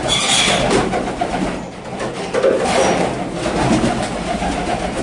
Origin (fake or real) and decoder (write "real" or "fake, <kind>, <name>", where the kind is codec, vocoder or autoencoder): real